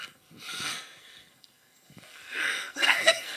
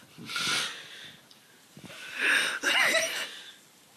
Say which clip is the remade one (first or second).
first